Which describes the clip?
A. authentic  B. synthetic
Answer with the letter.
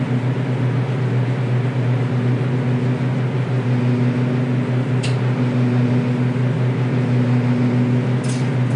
A